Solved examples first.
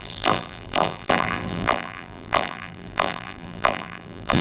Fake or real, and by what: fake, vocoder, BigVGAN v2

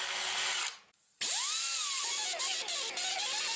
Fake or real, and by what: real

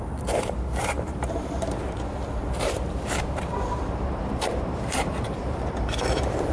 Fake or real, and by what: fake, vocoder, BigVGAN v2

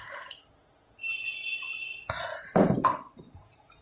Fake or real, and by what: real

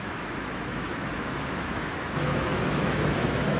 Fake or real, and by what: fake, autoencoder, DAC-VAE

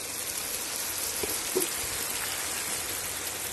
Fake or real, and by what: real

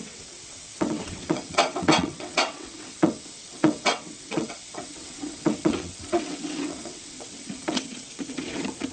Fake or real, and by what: fake, vocoder, WaveNeXt